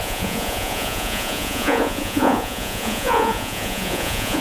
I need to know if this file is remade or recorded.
remade